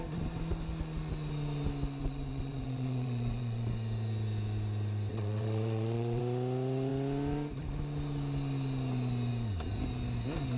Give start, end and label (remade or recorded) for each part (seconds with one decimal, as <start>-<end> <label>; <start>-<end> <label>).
0.0-2.0 recorded; 2.0-3.7 remade; 3.7-5.1 recorded; 5.1-6.2 remade; 6.2-10.6 recorded

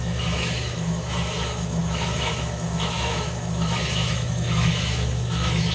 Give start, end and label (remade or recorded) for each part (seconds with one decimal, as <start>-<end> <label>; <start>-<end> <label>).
0.0-5.7 remade

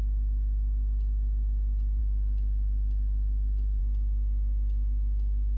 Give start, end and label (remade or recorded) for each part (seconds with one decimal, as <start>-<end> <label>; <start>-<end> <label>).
0.0-2.0 remade; 2.0-3.8 recorded; 3.8-5.6 remade

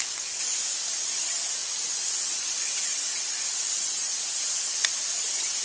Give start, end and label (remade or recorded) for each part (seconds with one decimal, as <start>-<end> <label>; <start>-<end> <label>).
0.0-1.6 recorded; 1.6-5.0 remade; 5.0-5.6 recorded